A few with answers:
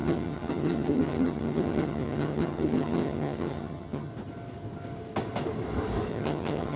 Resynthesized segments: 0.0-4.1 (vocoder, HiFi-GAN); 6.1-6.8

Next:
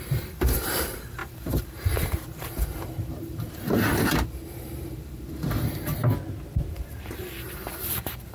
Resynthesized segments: 0.0-6.0 (vocoder, BigVGAN v2); 6.7-8.3

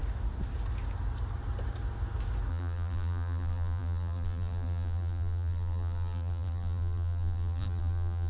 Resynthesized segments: 2.5-8.3 (vocoder, BigVGAN v2)

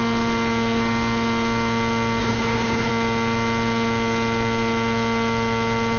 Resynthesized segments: 2.2-2.9 (codec, HILCodec)

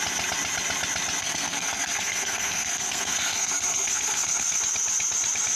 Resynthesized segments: 1.2-4.6 (codec, SNAC)

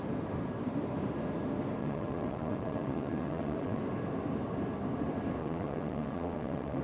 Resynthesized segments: 1.8-3.8 (vocoder, WaveNeXt); 5.4-6.8